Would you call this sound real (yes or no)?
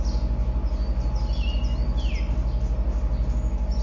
yes